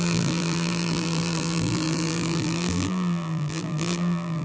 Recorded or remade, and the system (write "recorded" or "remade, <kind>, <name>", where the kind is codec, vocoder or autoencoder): remade, vocoder, BigVGAN v2